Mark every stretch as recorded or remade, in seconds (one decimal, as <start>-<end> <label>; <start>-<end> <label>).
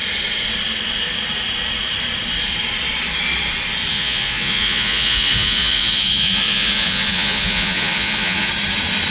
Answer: 0.0-3.9 recorded; 3.9-8.5 remade; 8.5-9.1 recorded